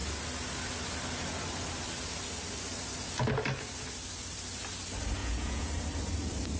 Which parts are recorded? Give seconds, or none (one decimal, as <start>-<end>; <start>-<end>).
0.0-5.2; 5.7-6.6